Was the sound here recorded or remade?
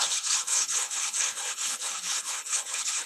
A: remade